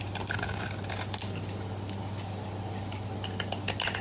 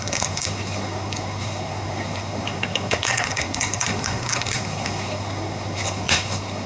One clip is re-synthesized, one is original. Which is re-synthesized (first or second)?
second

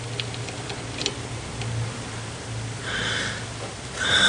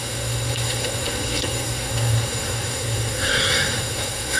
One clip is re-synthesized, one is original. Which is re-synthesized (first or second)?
second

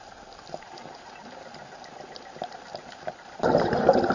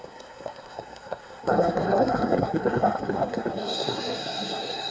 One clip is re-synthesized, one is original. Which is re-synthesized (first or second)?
second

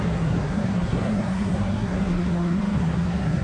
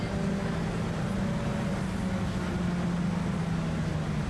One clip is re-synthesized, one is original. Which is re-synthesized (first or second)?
first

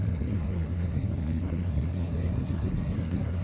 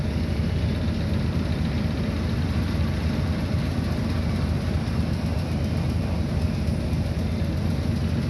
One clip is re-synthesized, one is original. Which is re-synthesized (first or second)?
first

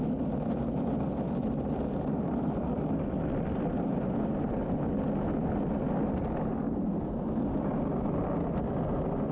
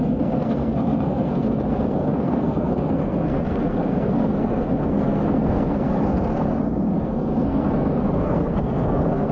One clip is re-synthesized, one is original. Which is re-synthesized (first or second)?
second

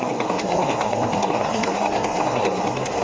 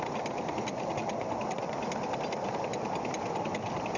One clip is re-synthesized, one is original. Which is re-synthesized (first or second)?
first